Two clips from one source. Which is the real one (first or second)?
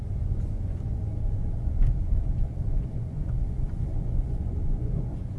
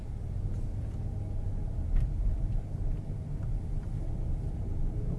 second